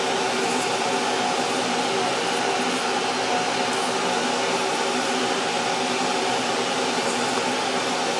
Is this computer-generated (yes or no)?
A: no